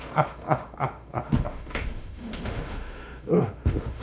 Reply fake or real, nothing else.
fake